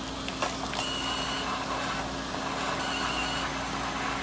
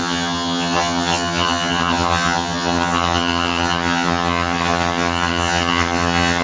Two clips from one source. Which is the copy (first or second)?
second